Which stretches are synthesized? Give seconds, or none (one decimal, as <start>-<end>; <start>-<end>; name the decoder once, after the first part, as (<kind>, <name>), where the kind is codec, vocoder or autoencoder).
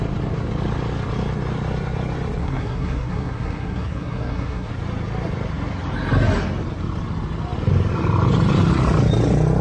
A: 2.4-4.7 (codec, SNAC)